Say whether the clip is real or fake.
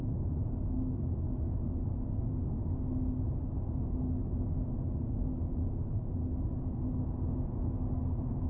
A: real